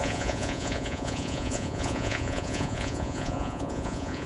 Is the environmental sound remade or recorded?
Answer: remade